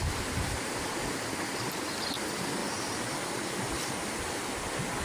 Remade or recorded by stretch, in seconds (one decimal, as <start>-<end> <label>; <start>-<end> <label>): 0.0-5.0 recorded